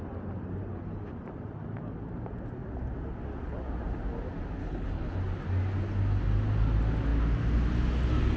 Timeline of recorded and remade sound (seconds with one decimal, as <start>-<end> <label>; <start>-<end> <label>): 0.0-4.6 recorded; 4.6-5.2 remade; 5.2-8.4 recorded

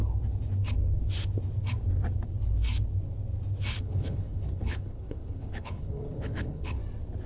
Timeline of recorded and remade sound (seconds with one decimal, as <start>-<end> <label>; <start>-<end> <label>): 0.0-3.7 recorded; 3.7-6.8 remade; 6.8-7.3 recorded

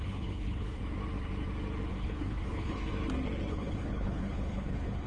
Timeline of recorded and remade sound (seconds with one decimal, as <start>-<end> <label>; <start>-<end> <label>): 0.0-0.8 remade; 0.8-1.9 recorded; 1.9-2.9 remade; 2.9-3.5 recorded; 3.5-5.1 remade